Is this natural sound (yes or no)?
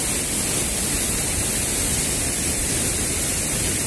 yes